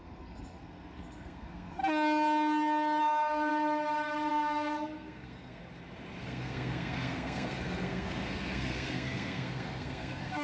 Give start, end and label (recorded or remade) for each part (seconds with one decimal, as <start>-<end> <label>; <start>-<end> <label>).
0.0-1.8 remade; 1.8-3.0 recorded; 3.0-3.5 remade; 3.5-4.3 recorded; 4.3-5.6 remade; 5.6-6.2 recorded; 6.2-10.4 remade